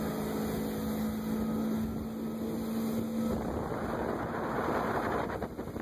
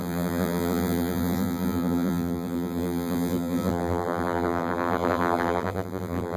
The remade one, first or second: second